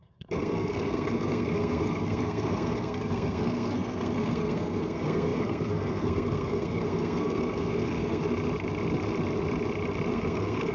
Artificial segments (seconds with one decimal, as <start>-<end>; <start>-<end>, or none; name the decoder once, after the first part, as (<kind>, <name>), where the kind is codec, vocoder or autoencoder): 0.0-8.2 (codec, SNAC); 10.1-10.7